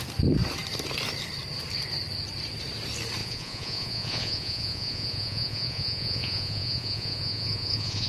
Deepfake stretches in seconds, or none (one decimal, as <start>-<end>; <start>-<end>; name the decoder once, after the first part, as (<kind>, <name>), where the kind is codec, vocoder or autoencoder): 3.2-8.1 (vocoder, Vocos)